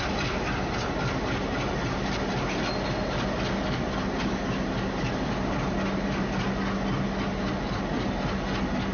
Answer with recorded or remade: recorded